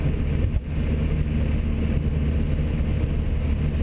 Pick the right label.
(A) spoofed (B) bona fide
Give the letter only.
B